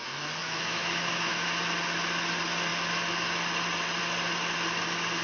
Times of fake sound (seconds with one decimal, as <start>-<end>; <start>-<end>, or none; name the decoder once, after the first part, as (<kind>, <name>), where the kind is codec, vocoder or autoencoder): 0.4-1.4 (autoencoder, DAC-VAE)